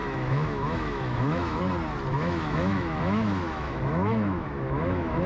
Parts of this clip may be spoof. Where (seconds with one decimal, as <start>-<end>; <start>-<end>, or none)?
0.0-1.6; 2.1-5.3